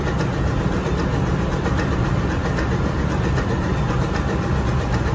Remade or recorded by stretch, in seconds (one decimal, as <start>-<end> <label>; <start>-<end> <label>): 0.0-5.1 recorded